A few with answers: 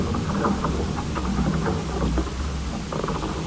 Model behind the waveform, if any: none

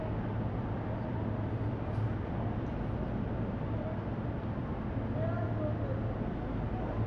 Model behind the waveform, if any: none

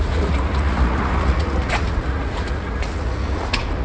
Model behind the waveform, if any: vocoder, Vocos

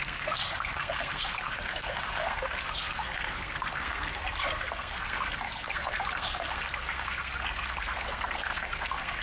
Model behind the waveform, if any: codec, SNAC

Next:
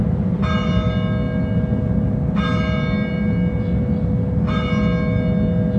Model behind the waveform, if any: none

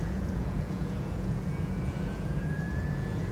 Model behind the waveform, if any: vocoder, Vocos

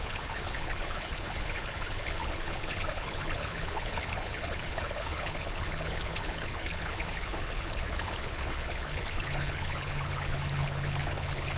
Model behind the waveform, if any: codec, HILCodec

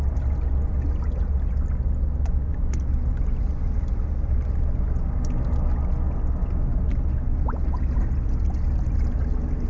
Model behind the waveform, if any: none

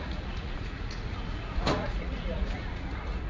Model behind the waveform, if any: vocoder, Vocos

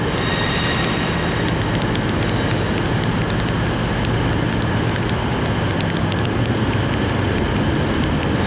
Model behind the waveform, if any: none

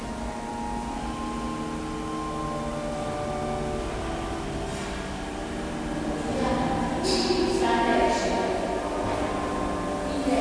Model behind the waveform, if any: none